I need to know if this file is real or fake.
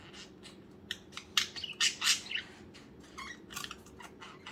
real